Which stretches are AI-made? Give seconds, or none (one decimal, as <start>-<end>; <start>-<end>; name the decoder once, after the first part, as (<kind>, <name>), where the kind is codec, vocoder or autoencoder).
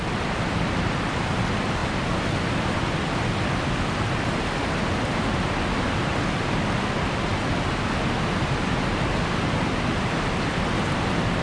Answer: none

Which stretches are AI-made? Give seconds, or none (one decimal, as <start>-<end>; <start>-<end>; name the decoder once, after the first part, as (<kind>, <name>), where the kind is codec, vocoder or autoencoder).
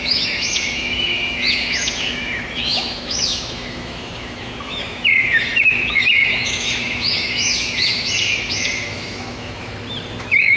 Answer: 0.0-9.7 (autoencoder, DAC-VAE); 10.2-10.6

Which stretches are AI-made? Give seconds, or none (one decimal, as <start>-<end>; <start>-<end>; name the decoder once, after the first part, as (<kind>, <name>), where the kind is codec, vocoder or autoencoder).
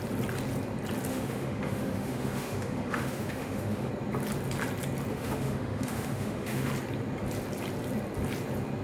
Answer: 1.1-3.9 (autoencoder, DAC-VAE); 5.1-6.7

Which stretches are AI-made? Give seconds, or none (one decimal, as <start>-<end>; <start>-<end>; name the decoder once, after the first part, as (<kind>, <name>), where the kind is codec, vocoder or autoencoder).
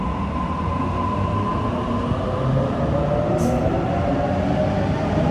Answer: none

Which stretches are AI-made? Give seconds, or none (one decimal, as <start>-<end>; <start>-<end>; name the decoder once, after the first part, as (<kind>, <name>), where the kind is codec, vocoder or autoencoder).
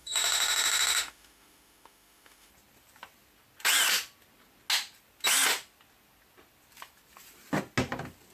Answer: 0.0-2.5 (autoencoder, DAC-VAE)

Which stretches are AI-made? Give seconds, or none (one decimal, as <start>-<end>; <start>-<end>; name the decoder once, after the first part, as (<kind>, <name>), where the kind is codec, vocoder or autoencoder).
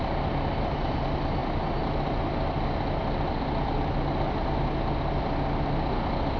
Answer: none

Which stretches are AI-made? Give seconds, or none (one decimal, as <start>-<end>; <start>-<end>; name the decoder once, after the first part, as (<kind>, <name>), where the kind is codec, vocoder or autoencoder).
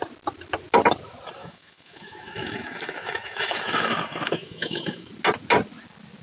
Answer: 1.4-5.1 (autoencoder, DAC-VAE)